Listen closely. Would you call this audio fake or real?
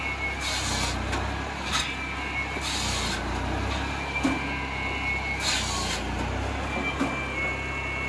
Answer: real